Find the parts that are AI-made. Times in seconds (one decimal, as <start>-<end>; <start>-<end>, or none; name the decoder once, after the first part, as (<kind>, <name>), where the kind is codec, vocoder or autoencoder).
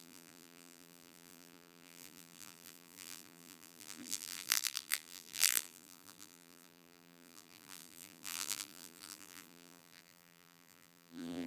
0.0-11.5 (vocoder, BigVGAN v2)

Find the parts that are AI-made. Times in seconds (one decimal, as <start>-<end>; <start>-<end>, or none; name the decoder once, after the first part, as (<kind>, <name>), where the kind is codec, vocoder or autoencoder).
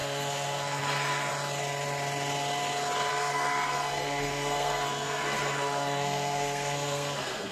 0.0-1.3 (codec, SNAC); 3.1-7.5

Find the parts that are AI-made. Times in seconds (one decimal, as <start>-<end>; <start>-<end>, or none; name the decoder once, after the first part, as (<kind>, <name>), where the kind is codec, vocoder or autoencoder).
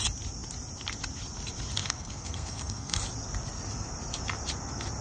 1.8-3.0 (codec, SNAC)